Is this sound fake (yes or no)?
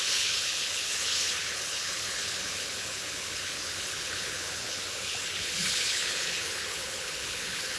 yes